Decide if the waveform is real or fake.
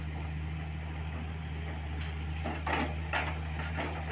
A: real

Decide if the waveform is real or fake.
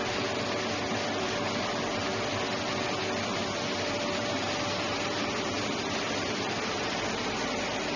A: real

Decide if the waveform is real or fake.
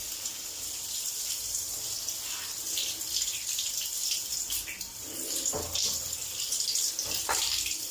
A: fake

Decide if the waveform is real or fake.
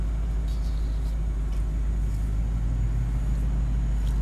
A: real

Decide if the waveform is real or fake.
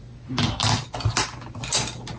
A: real